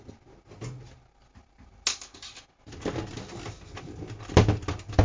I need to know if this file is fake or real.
real